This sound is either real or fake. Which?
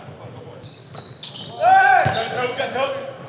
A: real